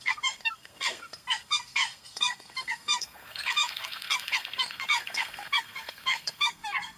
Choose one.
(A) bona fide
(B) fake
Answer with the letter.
B